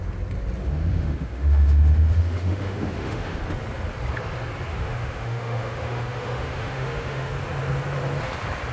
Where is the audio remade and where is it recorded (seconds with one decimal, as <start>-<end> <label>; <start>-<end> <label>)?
0.0-0.6 recorded; 0.6-3.4 remade; 3.4-4.7 recorded; 4.7-7.3 remade; 7.3-8.7 recorded